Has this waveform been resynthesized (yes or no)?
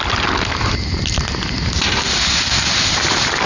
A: no